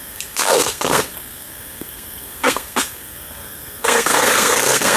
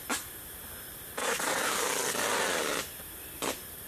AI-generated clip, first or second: first